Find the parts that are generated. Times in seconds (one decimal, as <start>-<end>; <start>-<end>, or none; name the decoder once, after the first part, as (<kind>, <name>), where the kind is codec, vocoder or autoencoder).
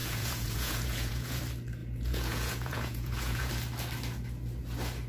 0.0-1.4 (vocoder, Vocos); 1.8-3.5